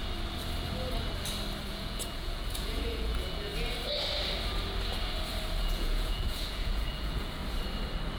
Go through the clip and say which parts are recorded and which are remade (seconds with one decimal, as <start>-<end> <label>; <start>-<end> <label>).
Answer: 0.0-1.6 recorded; 1.6-3.5 remade; 3.5-5.6 recorded; 5.6-7.4 remade; 7.4-8.2 recorded